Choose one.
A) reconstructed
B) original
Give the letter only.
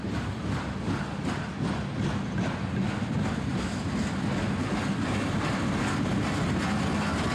B